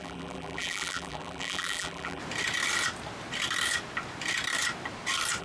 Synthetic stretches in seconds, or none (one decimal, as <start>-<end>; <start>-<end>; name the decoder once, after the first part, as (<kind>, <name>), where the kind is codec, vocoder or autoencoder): 0.0-2.2 (vocoder, BigVGAN v2)

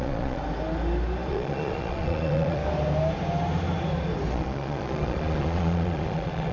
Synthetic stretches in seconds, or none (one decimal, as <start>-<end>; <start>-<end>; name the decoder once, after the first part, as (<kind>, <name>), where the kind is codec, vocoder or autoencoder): 0.0-0.4 (vocoder, Vocos); 1.3-2.6; 4.3-6.5

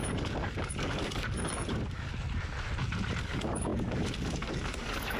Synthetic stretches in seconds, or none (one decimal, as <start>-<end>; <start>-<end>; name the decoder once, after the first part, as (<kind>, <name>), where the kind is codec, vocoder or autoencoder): 0.0-2.1 (codec, DAC); 3.2-5.2

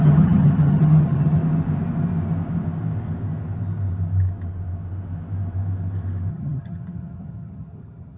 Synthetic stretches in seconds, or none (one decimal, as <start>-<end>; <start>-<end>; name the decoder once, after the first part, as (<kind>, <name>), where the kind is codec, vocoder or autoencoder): 0.0-1.4 (vocoder, HiFi-GAN); 6.3-8.2

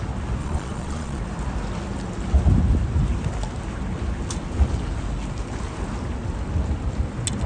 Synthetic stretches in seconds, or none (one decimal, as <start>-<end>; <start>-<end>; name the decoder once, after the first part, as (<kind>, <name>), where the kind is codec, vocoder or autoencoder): 0.4-1.2 (vocoder, Vocos)

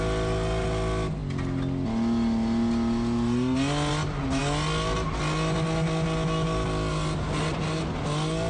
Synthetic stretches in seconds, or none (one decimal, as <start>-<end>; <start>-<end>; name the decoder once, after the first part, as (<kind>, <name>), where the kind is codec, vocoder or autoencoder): none

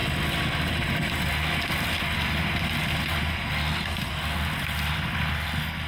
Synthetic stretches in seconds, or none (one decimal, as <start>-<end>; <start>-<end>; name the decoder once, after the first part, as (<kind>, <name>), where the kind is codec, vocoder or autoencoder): none